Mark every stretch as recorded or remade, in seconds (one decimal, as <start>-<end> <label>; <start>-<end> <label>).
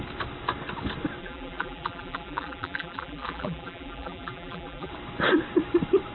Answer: 0.0-1.2 recorded; 1.2-4.9 remade; 4.9-6.1 recorded